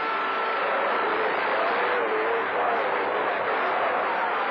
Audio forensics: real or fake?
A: real